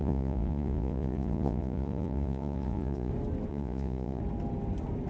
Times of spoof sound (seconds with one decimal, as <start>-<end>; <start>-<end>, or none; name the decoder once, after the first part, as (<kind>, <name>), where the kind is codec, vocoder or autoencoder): 0.0-3.1 (vocoder, Vocos); 3.5-4.2